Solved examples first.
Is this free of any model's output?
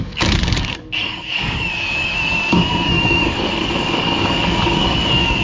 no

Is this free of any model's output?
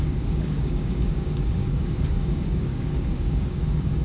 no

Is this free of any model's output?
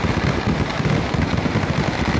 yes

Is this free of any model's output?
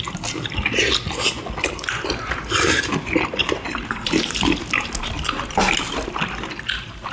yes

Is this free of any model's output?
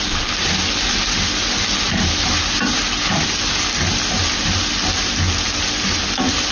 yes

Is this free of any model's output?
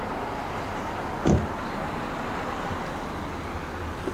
yes